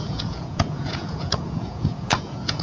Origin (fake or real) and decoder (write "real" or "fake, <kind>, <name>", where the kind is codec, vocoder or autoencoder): fake, vocoder, Vocos